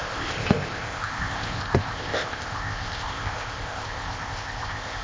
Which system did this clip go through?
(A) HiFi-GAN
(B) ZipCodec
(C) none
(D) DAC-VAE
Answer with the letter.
B